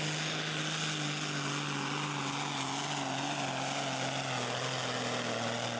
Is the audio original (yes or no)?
yes